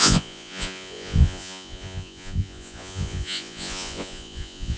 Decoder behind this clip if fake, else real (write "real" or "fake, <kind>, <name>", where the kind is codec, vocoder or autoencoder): fake, vocoder, Vocos